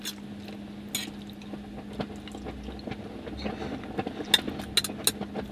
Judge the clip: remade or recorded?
recorded